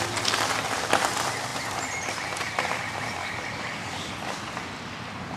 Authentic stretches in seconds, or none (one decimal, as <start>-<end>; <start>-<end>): 0.0-3.2; 4.1-5.4